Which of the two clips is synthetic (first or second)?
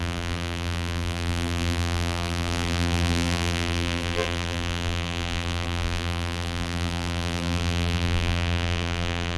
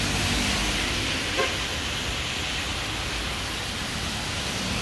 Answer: first